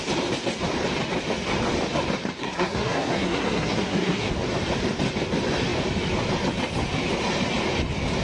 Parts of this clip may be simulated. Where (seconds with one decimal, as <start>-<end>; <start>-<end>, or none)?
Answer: 2.4-4.3